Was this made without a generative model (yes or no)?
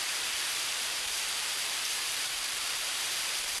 no